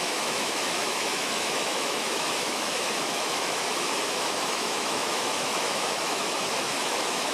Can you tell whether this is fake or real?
fake